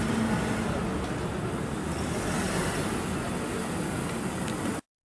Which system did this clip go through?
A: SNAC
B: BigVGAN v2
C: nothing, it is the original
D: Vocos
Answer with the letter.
C